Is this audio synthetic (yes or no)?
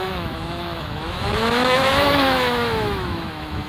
yes